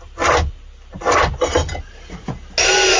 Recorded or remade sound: recorded